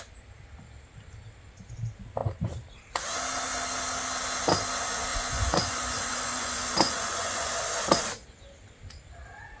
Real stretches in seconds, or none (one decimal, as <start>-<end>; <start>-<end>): 0.0-5.1; 7.5-9.6